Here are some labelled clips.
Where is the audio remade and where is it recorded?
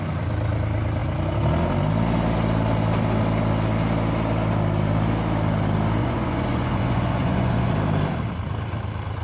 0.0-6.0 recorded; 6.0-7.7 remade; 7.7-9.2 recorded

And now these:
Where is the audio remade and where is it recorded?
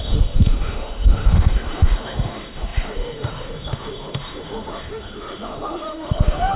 0.0-6.6 remade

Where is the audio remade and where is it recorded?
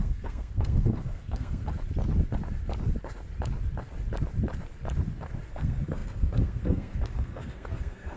0.0-1.7 remade; 1.7-5.5 recorded; 5.5-8.2 remade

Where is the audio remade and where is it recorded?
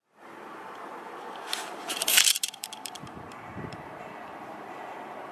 0.0-1.8 recorded; 1.8-5.3 remade